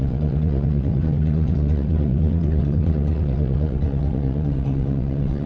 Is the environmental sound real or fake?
fake